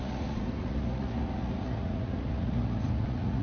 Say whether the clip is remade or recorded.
remade